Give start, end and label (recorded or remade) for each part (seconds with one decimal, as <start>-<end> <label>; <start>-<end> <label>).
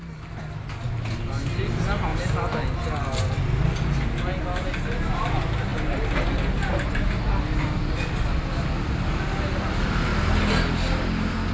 0.0-11.5 recorded